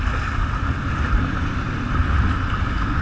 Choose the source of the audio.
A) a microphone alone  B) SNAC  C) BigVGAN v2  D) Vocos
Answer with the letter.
A